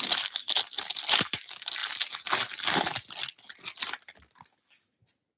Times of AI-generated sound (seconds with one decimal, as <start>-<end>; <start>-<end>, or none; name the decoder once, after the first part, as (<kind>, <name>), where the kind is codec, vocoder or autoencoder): 0.0-1.8 (vocoder, BigVGAN v2); 5.0-5.4

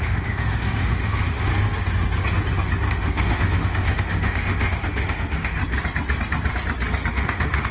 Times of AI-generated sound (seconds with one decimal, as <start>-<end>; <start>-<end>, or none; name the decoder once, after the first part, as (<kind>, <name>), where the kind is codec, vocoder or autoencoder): 0.0-1.5 (autoencoder, DAC-VAE); 2.9-5.6; 7.1-7.7

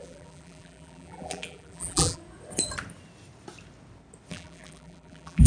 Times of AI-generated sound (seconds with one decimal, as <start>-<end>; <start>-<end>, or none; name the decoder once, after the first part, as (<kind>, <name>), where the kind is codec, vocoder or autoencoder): 0.0-2.2 (vocoder, BigVGAN v2); 4.3-5.5

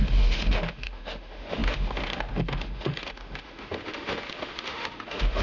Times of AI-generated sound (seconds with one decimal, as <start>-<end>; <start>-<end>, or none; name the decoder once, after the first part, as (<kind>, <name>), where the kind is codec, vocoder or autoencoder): 0.0-5.4 (autoencoder, DAC-VAE)

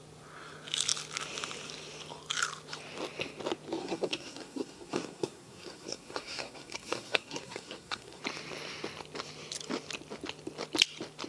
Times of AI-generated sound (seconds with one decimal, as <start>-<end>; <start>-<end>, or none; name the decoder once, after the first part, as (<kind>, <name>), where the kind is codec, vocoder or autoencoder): 3.8-8.2 (codec, SNAC)

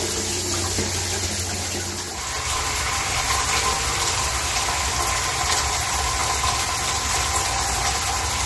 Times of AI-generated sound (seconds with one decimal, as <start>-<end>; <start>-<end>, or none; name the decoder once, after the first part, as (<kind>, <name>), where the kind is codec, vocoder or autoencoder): none

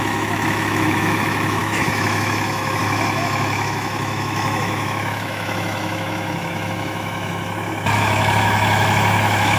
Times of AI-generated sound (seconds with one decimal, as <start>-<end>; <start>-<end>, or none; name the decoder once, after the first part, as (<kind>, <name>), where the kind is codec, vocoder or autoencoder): 0.0-9.6 (autoencoder, DAC-VAE)